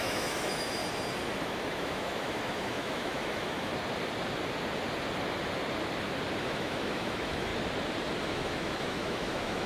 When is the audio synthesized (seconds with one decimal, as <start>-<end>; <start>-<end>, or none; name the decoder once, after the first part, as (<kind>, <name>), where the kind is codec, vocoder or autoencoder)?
0.0-0.8 (autoencoder, DAC-VAE); 1.4-3.7; 6.4-7.5; 8.2-9.7